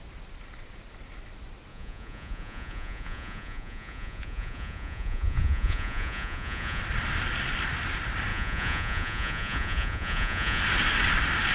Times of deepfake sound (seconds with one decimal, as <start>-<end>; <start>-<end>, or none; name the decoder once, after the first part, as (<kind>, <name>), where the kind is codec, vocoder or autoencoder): 1.7-6.8 (vocoder, Vocos); 8.3-10.6